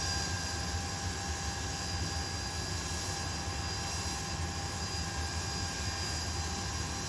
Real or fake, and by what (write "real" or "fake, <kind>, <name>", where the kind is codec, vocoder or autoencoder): real